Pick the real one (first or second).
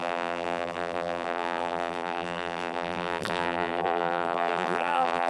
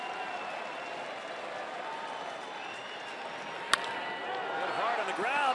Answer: second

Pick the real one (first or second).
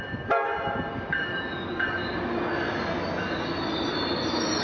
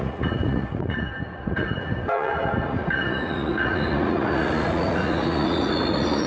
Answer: first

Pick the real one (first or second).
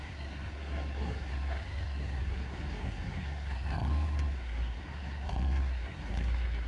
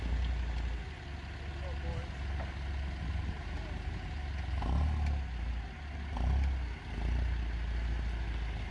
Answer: second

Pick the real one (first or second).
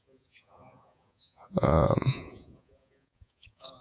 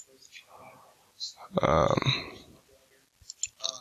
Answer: second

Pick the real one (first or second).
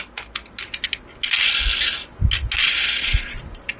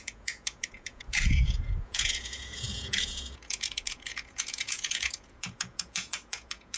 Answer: first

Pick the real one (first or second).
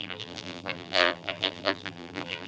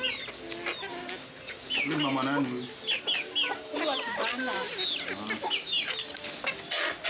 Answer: second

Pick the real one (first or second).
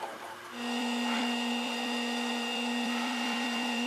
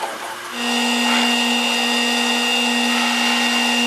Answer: second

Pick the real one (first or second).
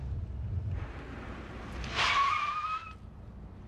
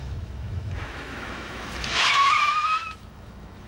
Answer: first